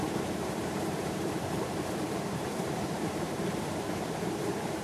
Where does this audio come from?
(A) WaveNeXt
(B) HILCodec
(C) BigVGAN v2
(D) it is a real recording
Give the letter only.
C